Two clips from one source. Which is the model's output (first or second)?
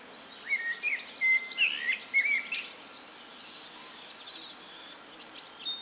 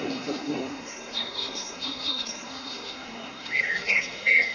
second